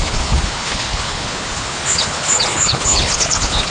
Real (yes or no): no